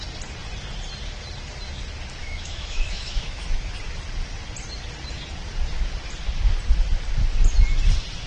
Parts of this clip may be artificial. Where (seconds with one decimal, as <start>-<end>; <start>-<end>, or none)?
2.2-3.4